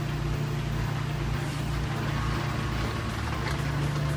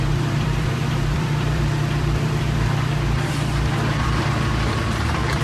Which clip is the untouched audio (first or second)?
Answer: first